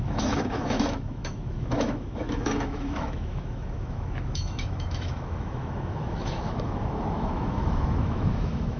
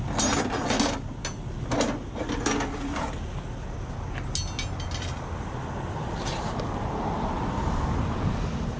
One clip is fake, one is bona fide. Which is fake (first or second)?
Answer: first